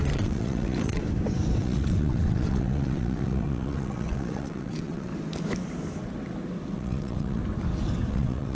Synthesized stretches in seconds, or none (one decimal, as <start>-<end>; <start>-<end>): 0.0-1.0; 1.6-5.1; 6.7-7.4; 8.1-8.5